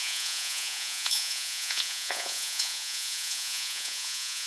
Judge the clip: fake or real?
fake